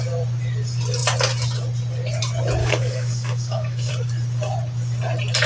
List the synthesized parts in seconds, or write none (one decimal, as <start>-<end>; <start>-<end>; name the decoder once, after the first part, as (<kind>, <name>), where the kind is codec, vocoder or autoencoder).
2.6-3.9 (codec, DAC)